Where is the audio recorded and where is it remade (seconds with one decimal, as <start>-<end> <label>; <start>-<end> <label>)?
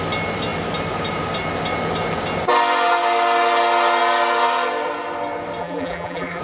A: 0.0-5.6 recorded; 5.6-6.4 remade